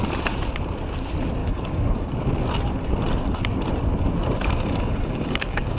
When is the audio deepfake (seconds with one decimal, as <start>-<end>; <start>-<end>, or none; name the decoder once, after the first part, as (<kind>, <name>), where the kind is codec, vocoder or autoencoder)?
1.4-2.1 (codec, DAC); 4.4-5.8